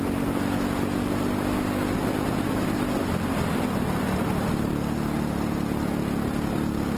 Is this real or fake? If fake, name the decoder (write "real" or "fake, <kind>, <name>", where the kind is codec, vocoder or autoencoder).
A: real